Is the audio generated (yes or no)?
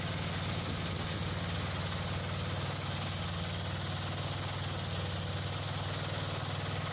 no